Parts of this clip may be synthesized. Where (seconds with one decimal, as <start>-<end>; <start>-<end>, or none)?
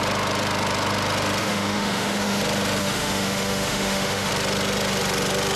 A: 1.4-2.4; 2.8-4.3